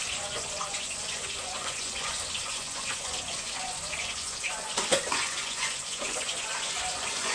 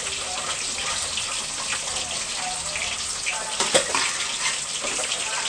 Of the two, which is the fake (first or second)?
first